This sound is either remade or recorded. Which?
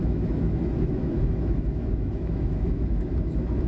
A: remade